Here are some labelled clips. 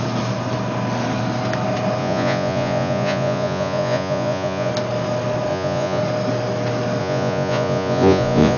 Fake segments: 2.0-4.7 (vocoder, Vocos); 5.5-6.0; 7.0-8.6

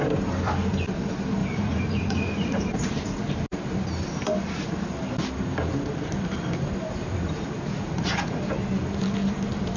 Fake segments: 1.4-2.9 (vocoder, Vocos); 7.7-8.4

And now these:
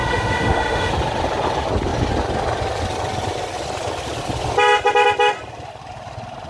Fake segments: 0.0-0.9 (autoencoder, DAC-VAE)

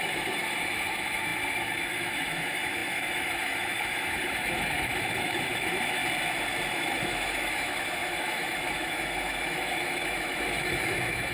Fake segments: 0.0-6.0 (autoencoder, DAC-VAE); 6.7-11.3